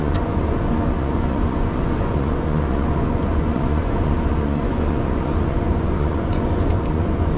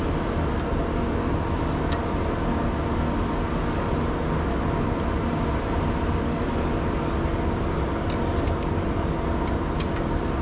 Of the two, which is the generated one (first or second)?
first